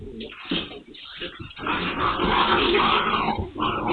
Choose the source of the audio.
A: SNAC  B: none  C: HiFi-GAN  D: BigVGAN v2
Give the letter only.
B